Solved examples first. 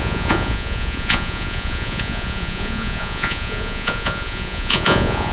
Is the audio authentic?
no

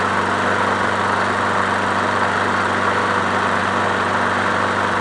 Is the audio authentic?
yes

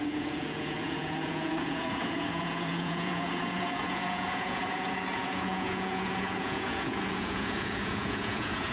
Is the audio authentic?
no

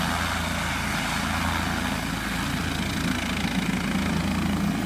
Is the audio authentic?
yes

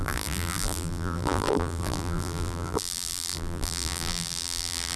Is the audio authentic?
no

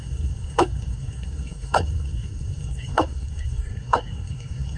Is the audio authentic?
no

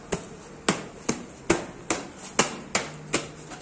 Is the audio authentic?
yes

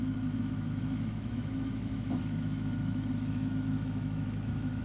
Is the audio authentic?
no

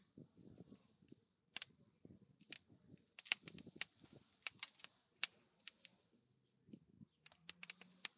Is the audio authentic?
no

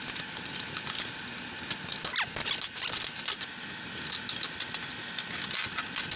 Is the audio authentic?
yes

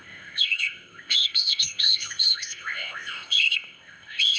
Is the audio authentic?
no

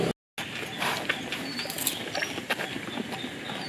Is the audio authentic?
yes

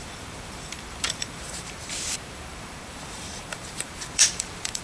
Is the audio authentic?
no